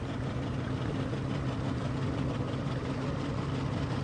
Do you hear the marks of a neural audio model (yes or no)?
no